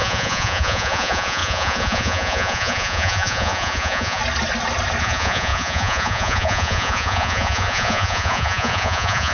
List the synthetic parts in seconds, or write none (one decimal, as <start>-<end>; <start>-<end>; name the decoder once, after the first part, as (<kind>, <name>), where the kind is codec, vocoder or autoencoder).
0.0-4.2 (vocoder, Vocos); 5.0-9.3